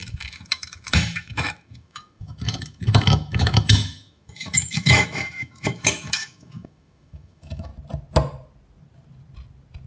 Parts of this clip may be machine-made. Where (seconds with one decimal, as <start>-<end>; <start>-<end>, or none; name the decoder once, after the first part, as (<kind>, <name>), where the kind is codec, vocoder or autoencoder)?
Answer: 0.0-7.7 (autoencoder, DAC-VAE)